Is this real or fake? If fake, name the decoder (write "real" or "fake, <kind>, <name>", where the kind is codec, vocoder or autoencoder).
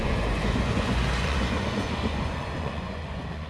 fake, vocoder, Vocos